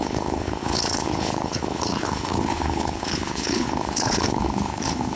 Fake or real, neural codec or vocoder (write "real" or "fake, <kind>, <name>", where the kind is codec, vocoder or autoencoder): fake, codec, HILCodec